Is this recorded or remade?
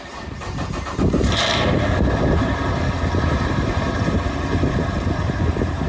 remade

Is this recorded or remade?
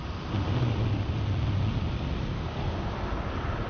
recorded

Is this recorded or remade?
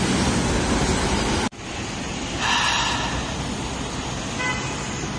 recorded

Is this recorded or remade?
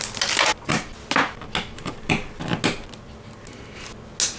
recorded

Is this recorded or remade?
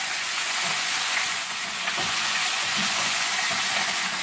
remade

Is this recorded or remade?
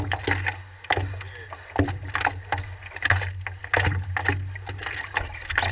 recorded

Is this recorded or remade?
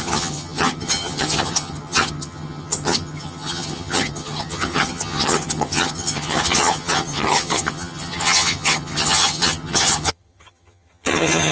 remade